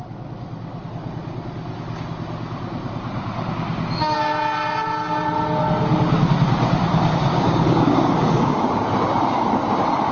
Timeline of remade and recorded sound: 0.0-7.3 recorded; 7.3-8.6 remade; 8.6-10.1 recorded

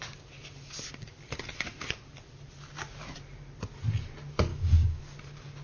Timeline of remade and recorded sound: 0.0-4.5 recorded; 4.5-5.0 remade; 5.0-5.6 recorded

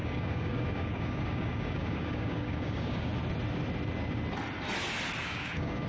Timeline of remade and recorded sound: 0.0-3.1 remade; 3.1-5.2 recorded; 5.2-5.9 remade

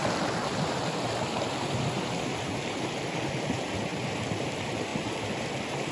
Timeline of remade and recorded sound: 0.0-5.9 recorded

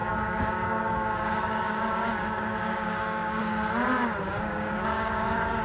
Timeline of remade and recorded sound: 0.0-3.4 remade; 3.4-4.0 recorded; 4.0-5.6 remade